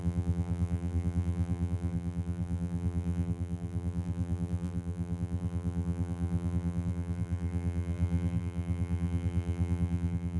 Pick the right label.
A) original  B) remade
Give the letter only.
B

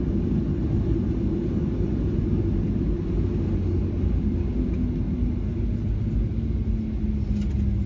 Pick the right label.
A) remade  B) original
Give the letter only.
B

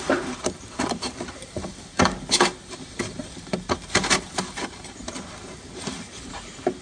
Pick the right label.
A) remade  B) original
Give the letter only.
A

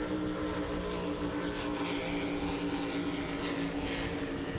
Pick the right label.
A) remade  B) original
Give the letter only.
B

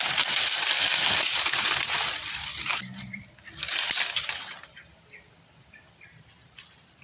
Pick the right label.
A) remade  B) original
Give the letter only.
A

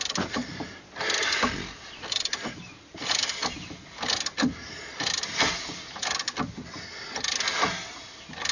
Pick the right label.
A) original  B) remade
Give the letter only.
A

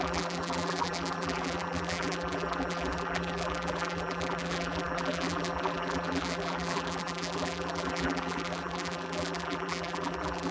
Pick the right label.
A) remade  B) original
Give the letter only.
A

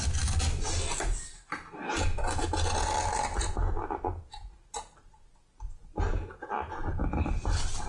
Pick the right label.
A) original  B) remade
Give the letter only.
A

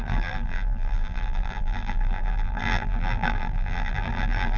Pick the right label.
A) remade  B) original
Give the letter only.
A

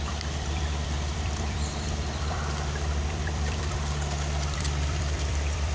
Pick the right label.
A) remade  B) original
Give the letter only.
A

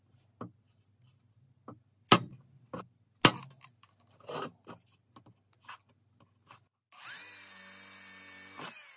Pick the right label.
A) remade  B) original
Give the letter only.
B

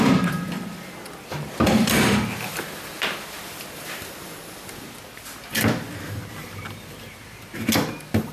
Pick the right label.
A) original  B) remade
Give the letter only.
B